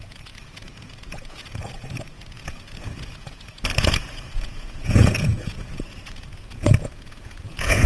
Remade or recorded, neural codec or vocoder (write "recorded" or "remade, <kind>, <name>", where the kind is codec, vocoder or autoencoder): remade, vocoder, Vocos